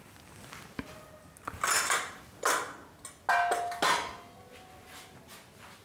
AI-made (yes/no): no